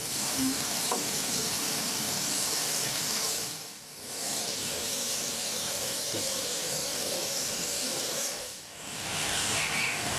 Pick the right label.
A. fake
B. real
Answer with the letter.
A